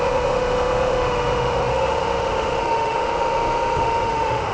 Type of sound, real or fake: fake